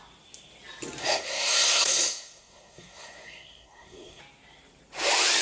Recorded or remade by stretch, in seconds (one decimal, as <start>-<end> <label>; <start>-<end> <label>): 0.0-1.0 recorded; 1.0-4.2 remade; 4.2-5.4 recorded